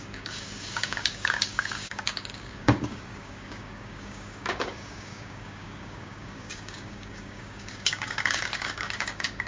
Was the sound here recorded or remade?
remade